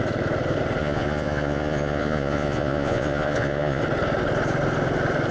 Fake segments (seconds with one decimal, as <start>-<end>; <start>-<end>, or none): 0.8-3.8